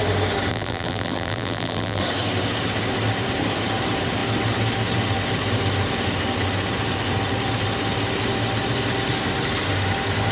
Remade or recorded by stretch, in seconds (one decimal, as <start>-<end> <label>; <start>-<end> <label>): 0.0-0.5 recorded; 0.5-2.0 remade; 2.0-10.3 recorded